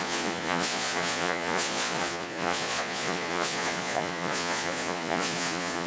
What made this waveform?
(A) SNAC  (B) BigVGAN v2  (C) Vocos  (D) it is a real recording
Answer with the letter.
C